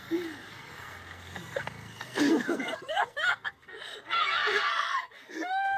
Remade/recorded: remade